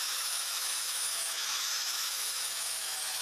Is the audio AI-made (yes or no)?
yes